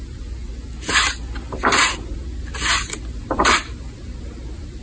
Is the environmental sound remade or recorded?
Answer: recorded